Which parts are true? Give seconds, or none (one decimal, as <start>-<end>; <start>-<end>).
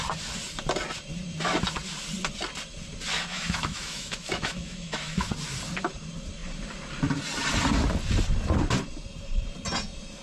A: 0.0-3.3; 5.3-10.2